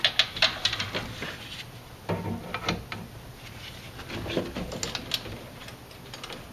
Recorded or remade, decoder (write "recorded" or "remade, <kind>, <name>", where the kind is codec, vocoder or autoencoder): recorded